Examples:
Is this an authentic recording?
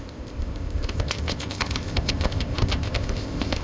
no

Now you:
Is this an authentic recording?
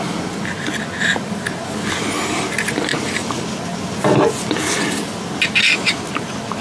yes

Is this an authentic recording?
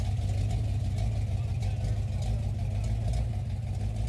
yes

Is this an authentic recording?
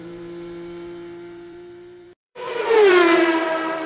no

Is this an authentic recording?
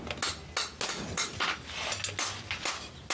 yes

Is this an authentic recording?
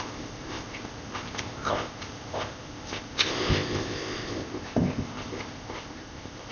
no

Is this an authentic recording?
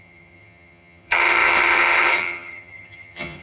no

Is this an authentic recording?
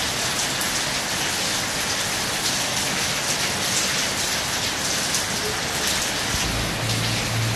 yes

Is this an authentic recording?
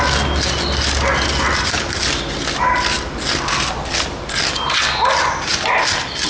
yes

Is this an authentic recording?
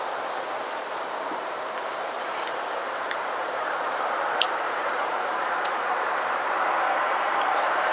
no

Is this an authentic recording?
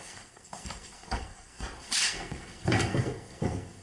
no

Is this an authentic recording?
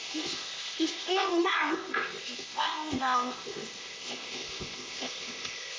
no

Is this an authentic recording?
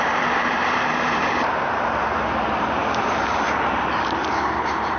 no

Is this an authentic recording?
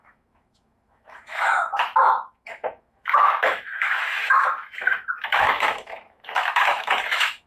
no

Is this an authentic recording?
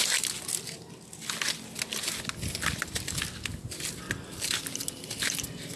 yes